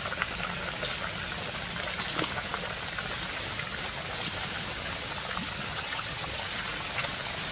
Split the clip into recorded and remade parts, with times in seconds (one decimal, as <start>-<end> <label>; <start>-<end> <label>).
0.0-5.7 recorded; 5.7-6.3 remade; 6.3-7.5 recorded